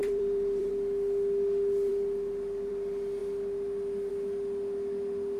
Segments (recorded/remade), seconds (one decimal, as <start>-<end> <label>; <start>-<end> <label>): 0.0-0.7 remade; 0.7-5.4 recorded